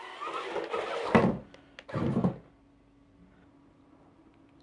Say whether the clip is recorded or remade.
recorded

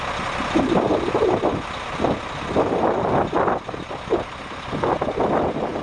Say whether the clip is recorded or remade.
recorded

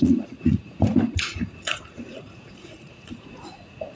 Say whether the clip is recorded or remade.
remade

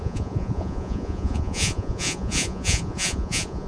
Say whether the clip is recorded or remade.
remade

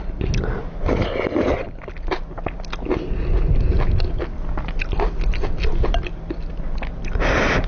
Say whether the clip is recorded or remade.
recorded